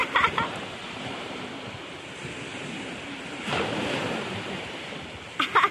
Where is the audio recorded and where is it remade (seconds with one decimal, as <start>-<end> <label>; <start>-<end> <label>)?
0.0-1.5 remade; 1.5-2.5 recorded; 2.5-5.0 remade; 5.0-5.7 recorded